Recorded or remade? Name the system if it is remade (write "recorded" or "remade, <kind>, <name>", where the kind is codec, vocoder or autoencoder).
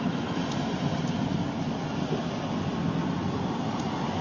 recorded